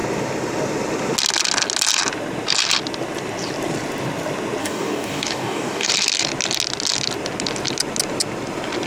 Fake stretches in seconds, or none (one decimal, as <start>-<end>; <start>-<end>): 4.6-5.9